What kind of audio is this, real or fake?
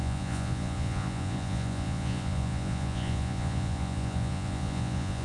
fake